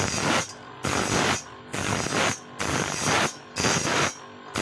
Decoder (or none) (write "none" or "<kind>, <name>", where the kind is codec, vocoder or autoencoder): none